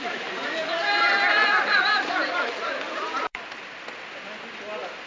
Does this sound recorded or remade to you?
remade